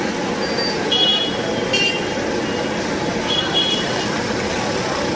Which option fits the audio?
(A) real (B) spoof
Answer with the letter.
A